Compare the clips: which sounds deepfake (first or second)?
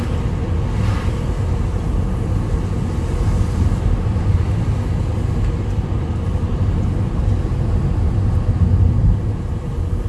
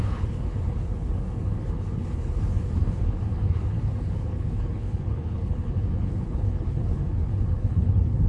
second